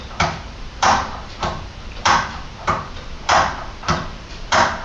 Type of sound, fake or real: fake